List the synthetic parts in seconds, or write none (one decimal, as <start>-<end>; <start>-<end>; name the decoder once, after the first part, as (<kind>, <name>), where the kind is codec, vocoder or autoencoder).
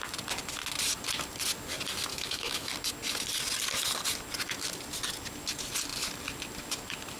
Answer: 2.1-2.7 (autoencoder, DAC-VAE)